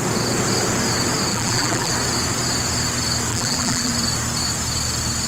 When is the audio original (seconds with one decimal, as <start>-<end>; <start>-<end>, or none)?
0.0-1.3; 1.9-3.3; 3.9-5.3